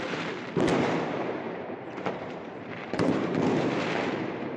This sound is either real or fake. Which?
fake